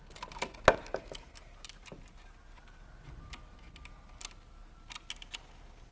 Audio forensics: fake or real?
real